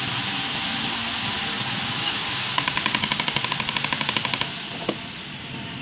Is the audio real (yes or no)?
yes